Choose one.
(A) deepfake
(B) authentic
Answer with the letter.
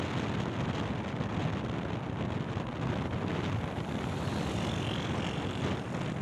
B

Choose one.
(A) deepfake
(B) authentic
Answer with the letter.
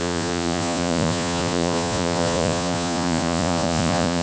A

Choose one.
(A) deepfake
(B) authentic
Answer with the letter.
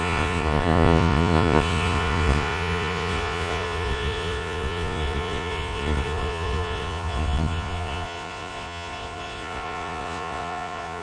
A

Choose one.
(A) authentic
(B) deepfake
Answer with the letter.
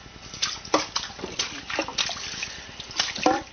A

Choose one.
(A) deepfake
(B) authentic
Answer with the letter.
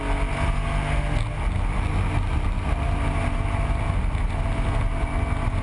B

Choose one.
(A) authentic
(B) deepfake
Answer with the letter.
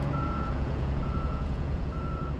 B